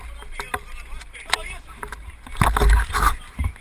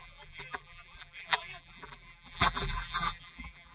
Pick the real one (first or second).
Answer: first